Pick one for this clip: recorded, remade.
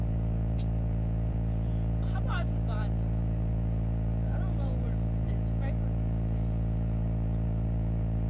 remade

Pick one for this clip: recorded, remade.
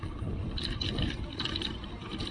recorded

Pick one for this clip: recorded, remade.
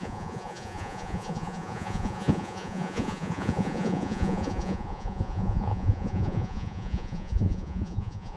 remade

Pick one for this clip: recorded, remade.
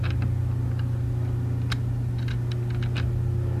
recorded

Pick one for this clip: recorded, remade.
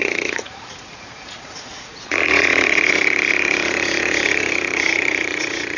remade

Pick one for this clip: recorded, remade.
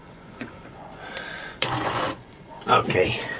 remade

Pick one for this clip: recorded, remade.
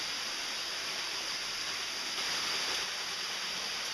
recorded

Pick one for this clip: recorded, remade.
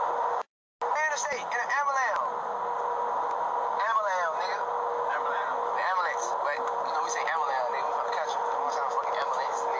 recorded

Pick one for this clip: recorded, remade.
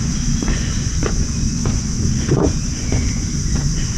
remade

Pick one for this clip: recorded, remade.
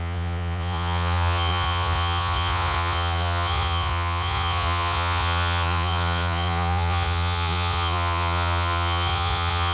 remade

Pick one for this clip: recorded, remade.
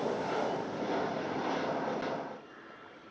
recorded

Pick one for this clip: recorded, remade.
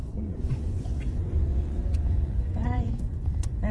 remade